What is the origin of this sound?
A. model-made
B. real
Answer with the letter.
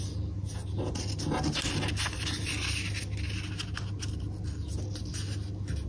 B